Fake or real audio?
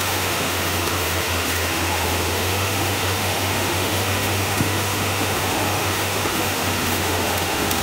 fake